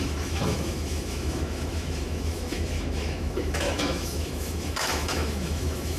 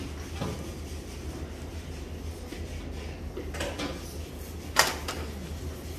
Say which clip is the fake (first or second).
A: first